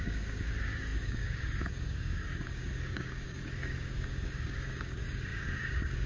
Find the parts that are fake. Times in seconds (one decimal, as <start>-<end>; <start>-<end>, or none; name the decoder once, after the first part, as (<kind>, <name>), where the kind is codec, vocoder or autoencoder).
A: 0.0-6.1 (codec, DAC)